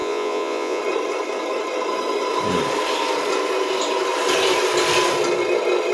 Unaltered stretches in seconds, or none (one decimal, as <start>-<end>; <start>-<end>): 0.8-5.9